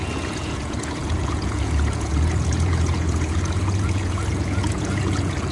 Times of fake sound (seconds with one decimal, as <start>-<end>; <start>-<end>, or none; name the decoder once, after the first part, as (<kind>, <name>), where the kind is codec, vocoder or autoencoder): 0.0-5.5 (vocoder, Vocos)